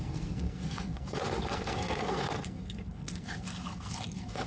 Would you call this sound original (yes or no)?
no